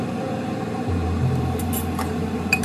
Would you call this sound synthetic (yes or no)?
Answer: yes